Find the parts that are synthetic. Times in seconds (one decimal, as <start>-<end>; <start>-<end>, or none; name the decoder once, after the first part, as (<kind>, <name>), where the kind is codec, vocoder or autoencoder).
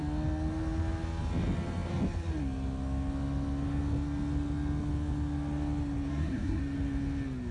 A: 6.1-6.6 (codec, SNAC)